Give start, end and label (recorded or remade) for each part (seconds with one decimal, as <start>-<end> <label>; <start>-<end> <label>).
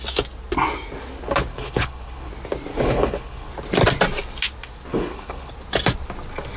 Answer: 0.0-1.5 recorded; 1.5-2.3 remade; 2.3-2.7 recorded; 2.7-3.5 remade; 3.5-4.9 recorded; 4.9-5.5 remade; 5.5-6.6 recorded